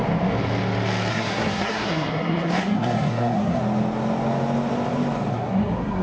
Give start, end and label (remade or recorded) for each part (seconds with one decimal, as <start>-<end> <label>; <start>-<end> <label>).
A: 0.0-1.1 recorded; 1.1-3.6 remade; 3.6-5.3 recorded; 5.3-6.0 remade